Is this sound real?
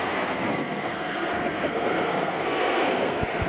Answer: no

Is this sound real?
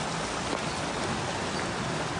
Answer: yes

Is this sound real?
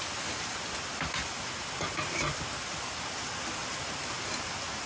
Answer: yes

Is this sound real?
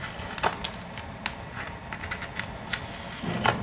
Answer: yes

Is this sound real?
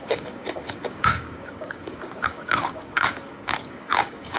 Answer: no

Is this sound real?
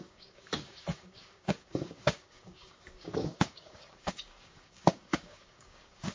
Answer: no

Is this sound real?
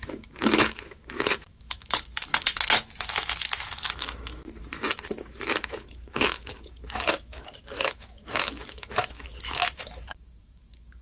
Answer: no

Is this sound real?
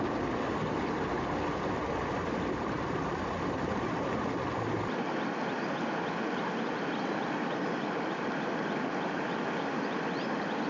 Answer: yes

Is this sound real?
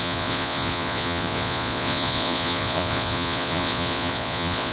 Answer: no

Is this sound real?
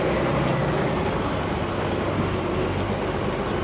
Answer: yes